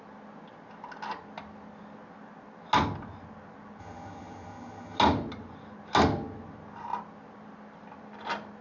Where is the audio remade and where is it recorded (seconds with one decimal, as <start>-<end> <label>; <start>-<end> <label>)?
0.0-3.8 recorded; 3.8-5.0 remade; 5.0-8.6 recorded